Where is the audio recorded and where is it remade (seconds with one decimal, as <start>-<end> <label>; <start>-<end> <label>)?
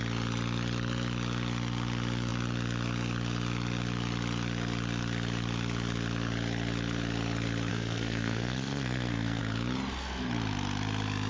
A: 0.0-7.7 recorded; 7.7-9.4 remade; 9.4-11.3 recorded